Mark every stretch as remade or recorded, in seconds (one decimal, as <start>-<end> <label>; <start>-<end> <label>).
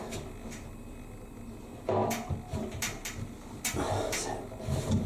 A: 0.0-5.1 recorded